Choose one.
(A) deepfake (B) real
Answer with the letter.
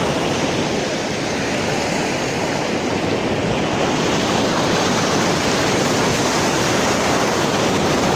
B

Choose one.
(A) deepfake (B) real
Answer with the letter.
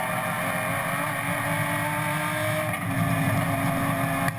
B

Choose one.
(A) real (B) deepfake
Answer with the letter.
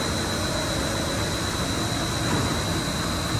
A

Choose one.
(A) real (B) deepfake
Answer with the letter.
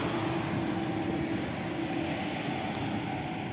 A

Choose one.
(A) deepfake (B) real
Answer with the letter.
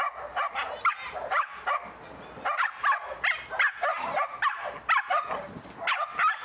B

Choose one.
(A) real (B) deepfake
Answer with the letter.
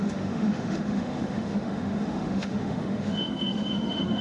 B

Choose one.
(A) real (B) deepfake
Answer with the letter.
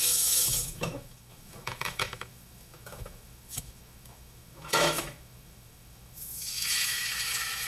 B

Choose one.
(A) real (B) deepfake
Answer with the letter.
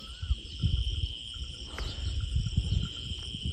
A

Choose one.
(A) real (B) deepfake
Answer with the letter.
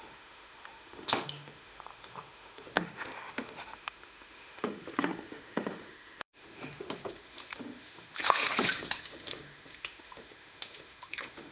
B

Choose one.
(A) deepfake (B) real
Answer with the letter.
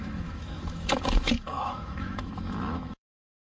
A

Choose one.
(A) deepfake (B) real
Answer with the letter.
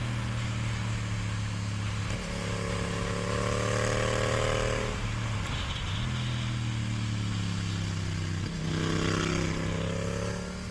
B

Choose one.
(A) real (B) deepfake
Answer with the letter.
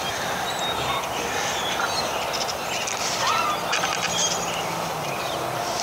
A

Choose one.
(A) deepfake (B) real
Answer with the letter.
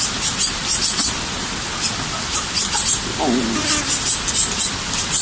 B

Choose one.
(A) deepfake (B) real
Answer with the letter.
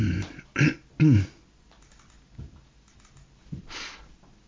B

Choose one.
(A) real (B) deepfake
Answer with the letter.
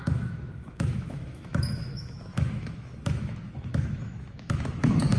B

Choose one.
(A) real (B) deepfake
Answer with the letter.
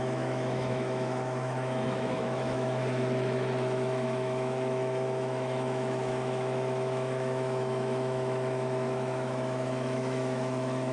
B